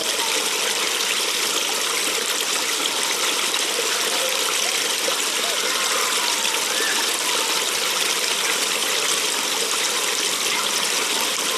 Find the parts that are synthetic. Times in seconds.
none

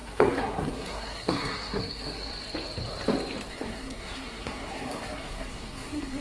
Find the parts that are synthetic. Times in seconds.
0.0-2.3 (codec, SNAC); 3.5-6.2

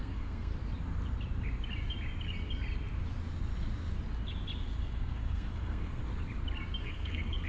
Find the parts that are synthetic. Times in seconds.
0.0-0.5 (codec, SNAC); 4.8-6.0; 6.8-7.5

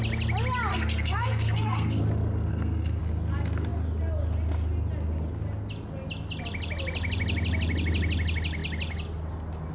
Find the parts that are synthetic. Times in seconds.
0.7-2.0 (codec, SNAC); 2.5-3.0

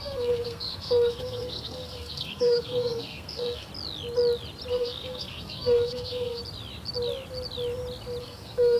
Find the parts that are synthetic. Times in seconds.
0.0-3.7 (codec, SNAC); 4.7-6.4; 8.2-8.8

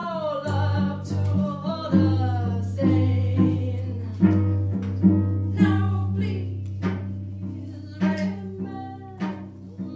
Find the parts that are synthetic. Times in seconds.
none